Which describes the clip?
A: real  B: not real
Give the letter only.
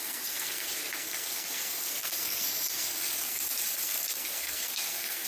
B